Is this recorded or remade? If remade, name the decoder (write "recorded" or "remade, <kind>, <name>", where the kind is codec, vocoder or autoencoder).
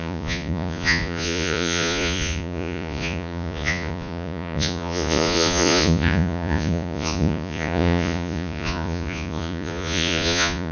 remade, vocoder, Vocos